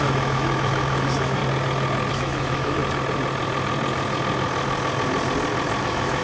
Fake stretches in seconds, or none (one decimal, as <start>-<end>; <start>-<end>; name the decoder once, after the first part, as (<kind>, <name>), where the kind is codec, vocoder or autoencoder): 0.0-1.4 (autoencoder, DAC-VAE); 2.1-2.8; 5.8-6.2